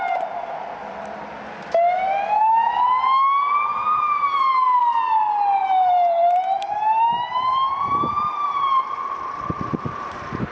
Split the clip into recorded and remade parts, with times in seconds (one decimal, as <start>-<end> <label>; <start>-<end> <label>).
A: 0.0-3.7 recorded; 3.7-4.8 remade; 4.8-5.6 recorded; 5.6-7.0 remade; 7.0-7.5 recorded; 7.5-10.5 remade